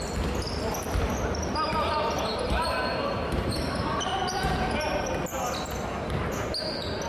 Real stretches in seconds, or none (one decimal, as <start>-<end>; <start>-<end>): 0.0-2.3; 5.1-7.1